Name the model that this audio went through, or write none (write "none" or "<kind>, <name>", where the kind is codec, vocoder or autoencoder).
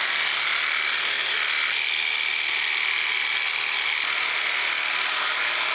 none